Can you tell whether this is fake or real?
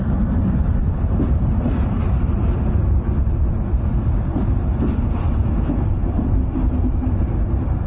fake